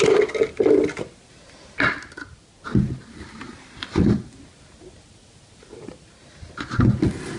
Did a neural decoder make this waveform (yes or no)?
no